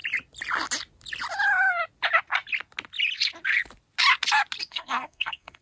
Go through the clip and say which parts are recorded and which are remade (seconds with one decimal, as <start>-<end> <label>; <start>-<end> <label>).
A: 0.0-4.7 recorded; 4.7-5.6 remade